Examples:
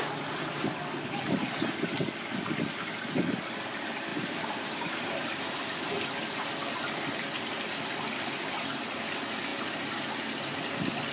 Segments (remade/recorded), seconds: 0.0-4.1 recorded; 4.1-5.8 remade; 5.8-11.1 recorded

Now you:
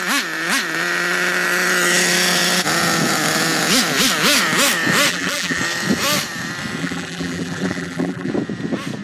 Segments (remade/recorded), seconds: 0.0-5.1 recorded; 5.1-5.6 remade; 5.6-6.8 recorded; 6.8-8.3 remade; 8.3-9.0 recorded

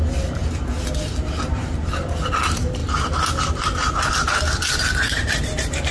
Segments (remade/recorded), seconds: 0.0-0.4 remade; 0.4-2.2 recorded; 2.2-2.8 remade; 2.8-4.1 recorded; 4.1-5.9 remade

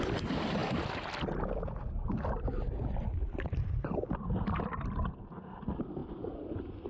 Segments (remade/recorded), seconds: 0.0-6.9 recorded

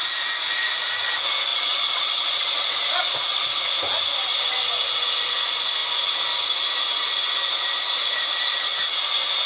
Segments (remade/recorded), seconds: 0.0-1.5 recorded; 1.5-3.7 remade; 3.7-9.5 recorded